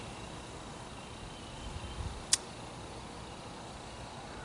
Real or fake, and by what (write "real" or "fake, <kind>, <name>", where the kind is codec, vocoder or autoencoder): real